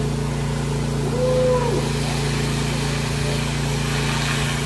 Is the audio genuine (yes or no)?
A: yes